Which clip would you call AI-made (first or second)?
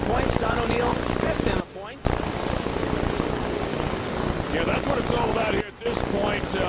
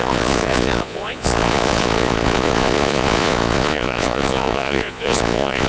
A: second